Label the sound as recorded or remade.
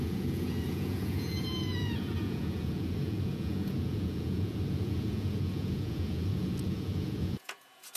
remade